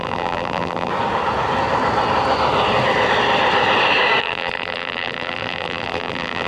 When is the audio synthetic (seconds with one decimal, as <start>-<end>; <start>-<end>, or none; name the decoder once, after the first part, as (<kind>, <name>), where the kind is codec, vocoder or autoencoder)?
0.0-0.9 (vocoder, BigVGAN v2); 4.2-6.5